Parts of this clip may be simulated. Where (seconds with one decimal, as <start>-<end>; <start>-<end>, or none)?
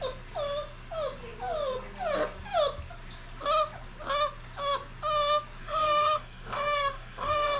5.6-7.6